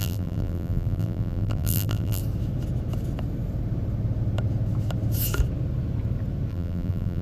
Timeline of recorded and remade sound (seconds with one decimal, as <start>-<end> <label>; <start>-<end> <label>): 0.0-2.2 remade; 2.2-6.5 recorded; 6.5-7.2 remade